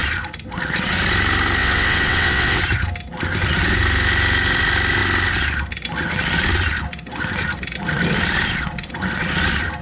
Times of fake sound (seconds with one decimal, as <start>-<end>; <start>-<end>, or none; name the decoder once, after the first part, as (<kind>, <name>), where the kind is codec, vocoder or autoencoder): 1.6-2.6 (vocoder, WaveNeXt)